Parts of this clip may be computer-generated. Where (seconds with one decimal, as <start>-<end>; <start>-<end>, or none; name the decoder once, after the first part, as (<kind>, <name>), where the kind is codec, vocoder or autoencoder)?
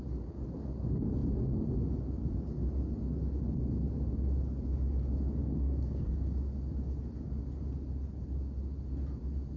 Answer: 5.4-6.1 (codec, SNAC)